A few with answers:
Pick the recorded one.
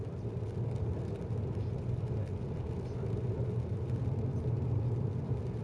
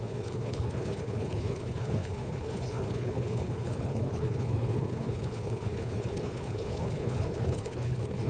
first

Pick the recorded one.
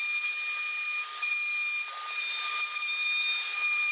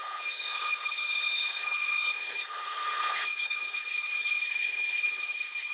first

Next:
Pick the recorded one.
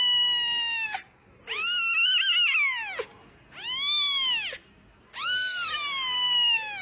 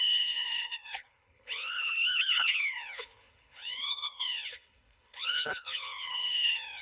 first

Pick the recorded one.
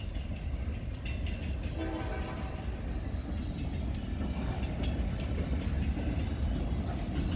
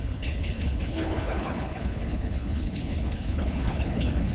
first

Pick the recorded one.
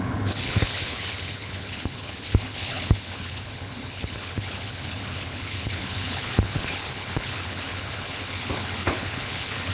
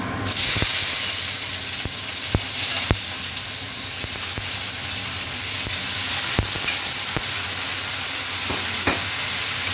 second